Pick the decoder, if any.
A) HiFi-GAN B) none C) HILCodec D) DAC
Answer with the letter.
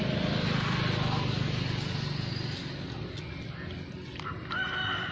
B